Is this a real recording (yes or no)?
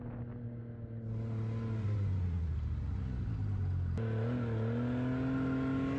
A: yes